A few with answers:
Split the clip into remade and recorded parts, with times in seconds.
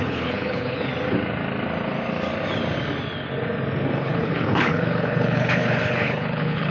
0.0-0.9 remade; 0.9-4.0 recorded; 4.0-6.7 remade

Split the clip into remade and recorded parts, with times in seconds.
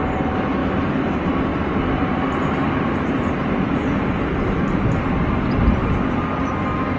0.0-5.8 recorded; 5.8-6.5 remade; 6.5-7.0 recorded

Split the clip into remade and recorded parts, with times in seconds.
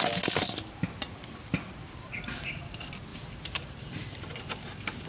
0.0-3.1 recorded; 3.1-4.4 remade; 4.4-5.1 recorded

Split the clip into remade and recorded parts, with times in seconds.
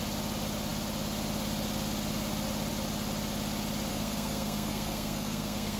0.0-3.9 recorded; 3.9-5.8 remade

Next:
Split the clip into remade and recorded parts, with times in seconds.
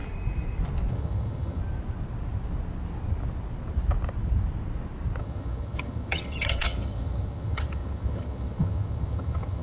0.0-0.9 recorded; 0.9-1.6 remade; 1.6-5.2 recorded; 5.2-9.6 remade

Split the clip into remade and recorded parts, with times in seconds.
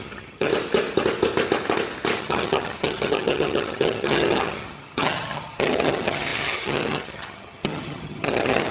0.0-0.5 remade; 0.5-2.2 recorded; 2.2-8.7 remade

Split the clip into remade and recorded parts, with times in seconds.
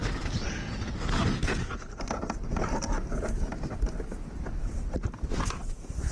0.0-3.5 recorded; 3.5-6.1 remade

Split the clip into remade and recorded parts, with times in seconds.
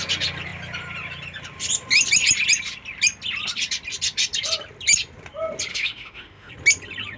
0.0-5.7 recorded; 5.7-6.5 remade; 6.5-7.2 recorded